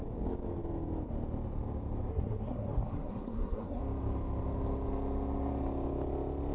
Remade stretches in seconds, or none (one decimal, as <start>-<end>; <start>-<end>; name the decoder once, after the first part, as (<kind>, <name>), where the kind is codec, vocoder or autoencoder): 2.1-3.8 (codec, SNAC)